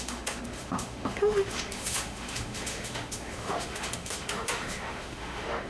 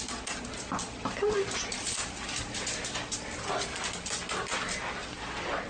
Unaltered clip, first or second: second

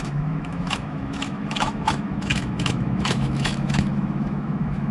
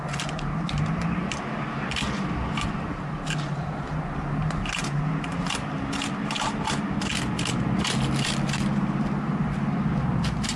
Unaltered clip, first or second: second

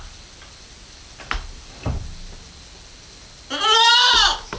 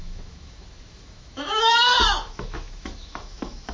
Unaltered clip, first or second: first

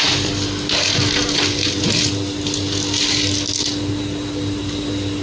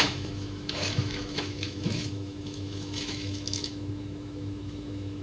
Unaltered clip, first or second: first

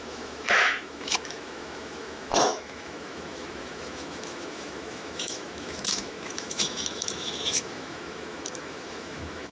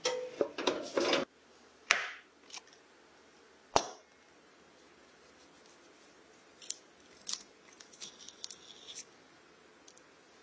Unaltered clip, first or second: second